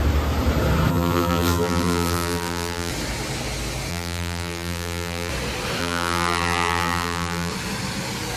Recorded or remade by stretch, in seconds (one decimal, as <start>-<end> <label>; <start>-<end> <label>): 0.0-0.9 recorded; 0.9-2.9 remade; 2.9-3.9 recorded; 3.9-5.3 remade; 5.3-5.8 recorded; 5.8-7.5 remade; 7.5-8.4 recorded